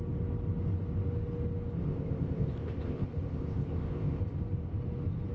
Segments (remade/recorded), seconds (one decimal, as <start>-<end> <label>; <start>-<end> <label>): 0.0-1.8 recorded; 1.8-4.2 remade; 4.2-5.3 recorded